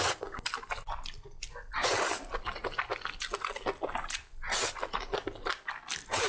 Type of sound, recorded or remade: recorded